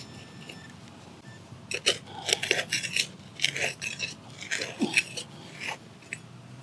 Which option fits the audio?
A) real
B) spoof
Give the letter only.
A